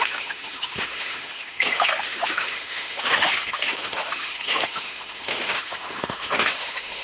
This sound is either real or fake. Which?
fake